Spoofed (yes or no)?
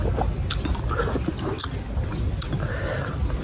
no